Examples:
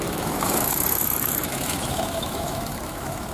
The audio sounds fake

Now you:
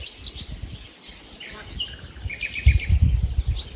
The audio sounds real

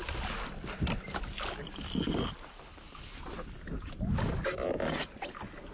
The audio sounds real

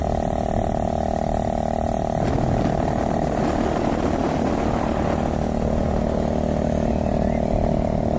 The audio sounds real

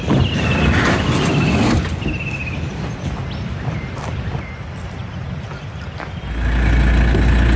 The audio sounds real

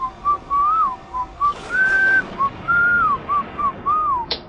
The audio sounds fake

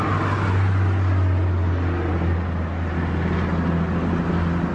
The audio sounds real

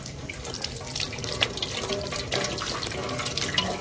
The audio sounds real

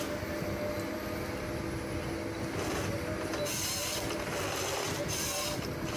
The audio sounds real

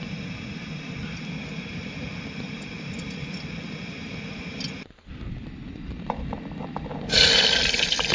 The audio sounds real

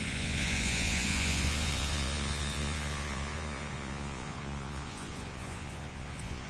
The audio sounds fake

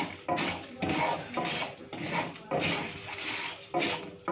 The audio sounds real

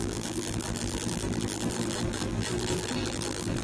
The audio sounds fake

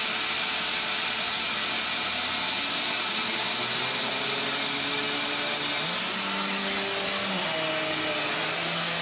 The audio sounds real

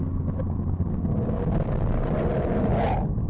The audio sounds real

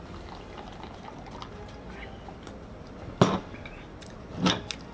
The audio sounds real